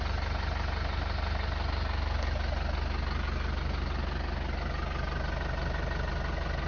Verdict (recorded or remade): recorded